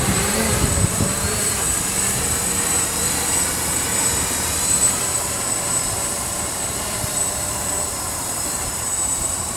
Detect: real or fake fake